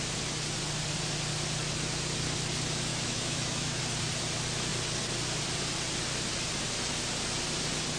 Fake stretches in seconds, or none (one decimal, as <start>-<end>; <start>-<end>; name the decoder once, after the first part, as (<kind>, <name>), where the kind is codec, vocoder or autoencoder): 2.9-3.8 (autoencoder, DAC-VAE)